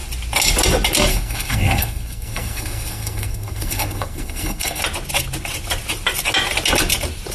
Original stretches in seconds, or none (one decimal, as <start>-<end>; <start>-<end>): 0.0-1.1; 4.8-7.3